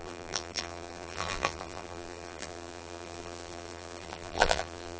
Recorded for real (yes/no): no